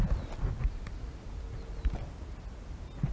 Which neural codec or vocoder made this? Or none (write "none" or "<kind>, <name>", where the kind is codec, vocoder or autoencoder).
none